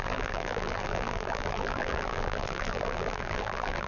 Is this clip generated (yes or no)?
yes